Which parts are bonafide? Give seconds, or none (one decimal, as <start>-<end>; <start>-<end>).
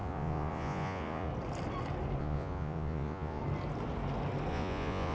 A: 1.3-2.2; 3.4-4.5